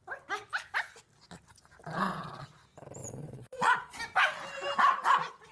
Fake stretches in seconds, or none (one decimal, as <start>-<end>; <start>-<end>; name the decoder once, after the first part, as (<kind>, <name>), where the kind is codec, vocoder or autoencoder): 3.0-4.0 (vocoder, Vocos)